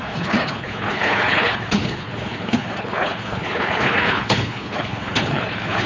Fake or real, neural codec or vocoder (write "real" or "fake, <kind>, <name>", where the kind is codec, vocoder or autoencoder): fake, codec, HILCodec